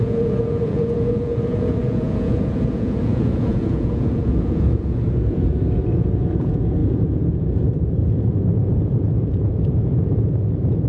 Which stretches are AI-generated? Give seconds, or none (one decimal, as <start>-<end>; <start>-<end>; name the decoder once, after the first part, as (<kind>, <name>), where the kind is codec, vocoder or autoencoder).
0.0-10.9 (vocoder, Vocos)